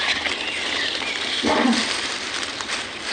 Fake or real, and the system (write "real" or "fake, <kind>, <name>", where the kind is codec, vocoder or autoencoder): real